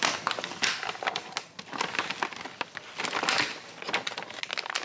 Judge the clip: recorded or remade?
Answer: recorded